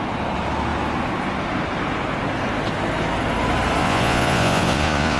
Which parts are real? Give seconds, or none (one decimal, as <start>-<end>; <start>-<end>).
0.0-3.8